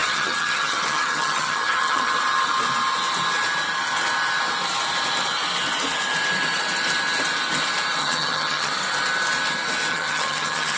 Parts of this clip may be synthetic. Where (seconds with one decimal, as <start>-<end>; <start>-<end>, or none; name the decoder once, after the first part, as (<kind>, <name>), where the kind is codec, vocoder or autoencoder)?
0.0-2.1 (vocoder, HiFi-GAN); 8.0-8.7; 9.9-10.8